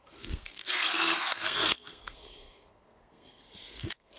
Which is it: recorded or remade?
remade